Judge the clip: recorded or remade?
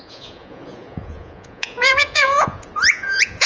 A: remade